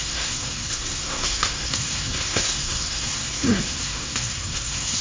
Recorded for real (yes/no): no